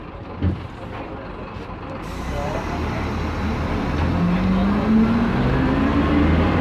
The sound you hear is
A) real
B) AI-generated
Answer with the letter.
A